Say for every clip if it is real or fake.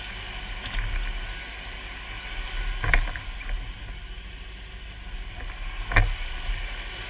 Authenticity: real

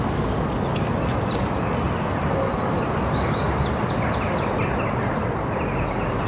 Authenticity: real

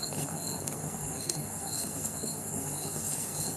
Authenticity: fake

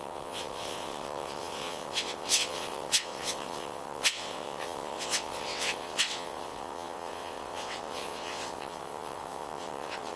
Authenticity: fake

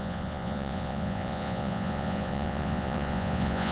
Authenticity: fake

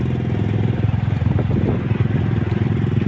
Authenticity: real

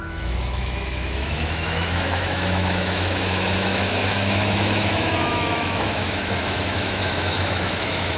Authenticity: fake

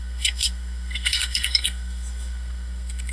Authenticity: fake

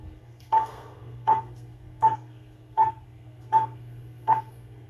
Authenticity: fake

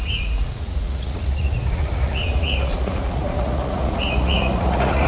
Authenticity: fake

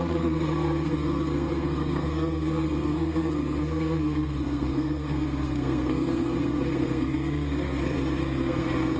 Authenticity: fake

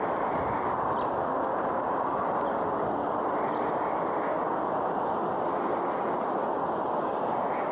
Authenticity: real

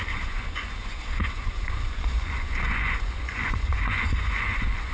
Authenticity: fake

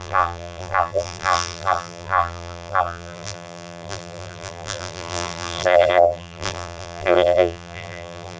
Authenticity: fake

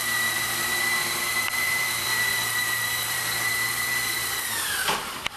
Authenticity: fake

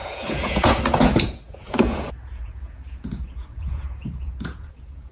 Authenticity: fake